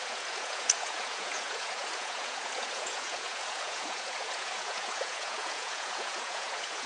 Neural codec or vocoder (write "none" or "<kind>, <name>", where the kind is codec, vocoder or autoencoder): vocoder, Vocos